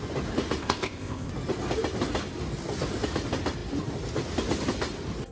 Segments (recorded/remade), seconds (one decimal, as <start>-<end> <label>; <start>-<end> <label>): 0.0-0.6 recorded; 0.6-1.3 remade; 1.3-5.3 recorded